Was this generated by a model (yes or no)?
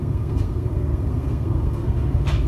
yes